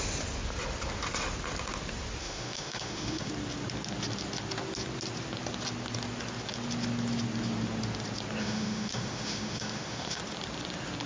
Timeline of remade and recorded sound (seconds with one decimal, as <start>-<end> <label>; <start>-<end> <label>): 0.0-2.2 recorded; 2.2-3.3 remade; 3.3-8.4 recorded; 8.4-10.2 remade; 10.2-11.1 recorded

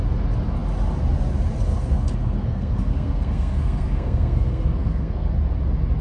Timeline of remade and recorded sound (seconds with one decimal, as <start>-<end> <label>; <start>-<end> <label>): 0.0-1.7 recorded; 1.7-5.3 remade; 5.3-6.0 recorded